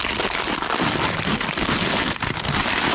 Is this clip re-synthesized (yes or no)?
no